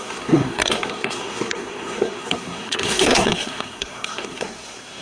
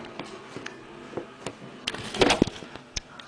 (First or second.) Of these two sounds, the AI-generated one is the first